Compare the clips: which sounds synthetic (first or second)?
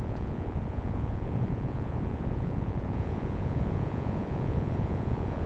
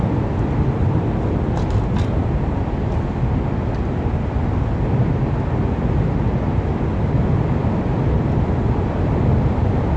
first